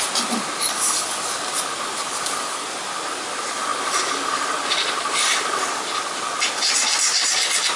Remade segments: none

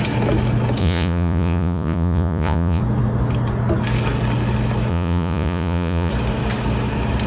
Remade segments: 0.8-2.8 (vocoder, Vocos); 4.9-6.1

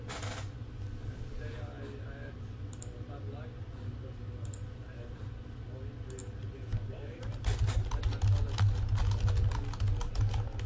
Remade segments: none